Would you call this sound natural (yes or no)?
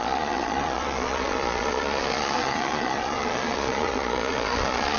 no